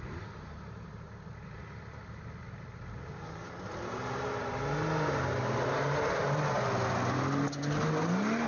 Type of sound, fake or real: real